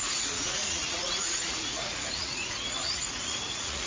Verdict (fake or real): fake